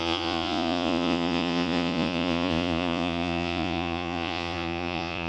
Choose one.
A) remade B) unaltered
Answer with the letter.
A